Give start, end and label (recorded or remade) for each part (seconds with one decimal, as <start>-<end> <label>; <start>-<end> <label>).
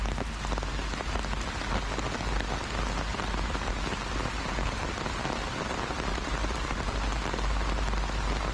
0.0-3.1 recorded; 3.1-3.7 remade; 3.7-4.2 recorded; 4.2-6.9 remade; 6.9-8.5 recorded